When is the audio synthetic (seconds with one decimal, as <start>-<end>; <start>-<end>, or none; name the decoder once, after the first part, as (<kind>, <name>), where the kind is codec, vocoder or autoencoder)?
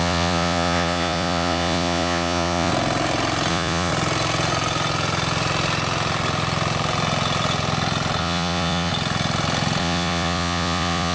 0.0-2.7 (vocoder, Vocos); 3.5-3.9; 8.2-8.9; 9.8-11.1